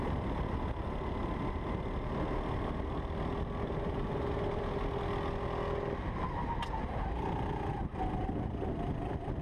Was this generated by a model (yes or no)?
no